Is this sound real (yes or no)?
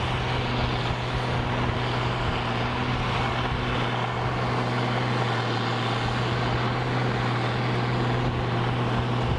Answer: yes